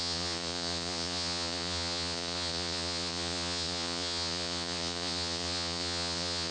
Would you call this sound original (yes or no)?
no